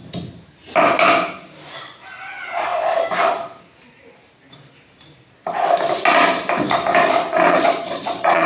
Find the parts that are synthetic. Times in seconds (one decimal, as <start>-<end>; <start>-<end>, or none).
7.5-8.5